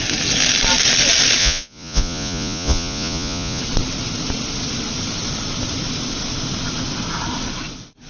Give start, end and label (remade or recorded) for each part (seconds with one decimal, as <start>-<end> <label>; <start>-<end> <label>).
0.0-1.4 recorded; 1.4-3.6 remade; 3.6-8.1 recorded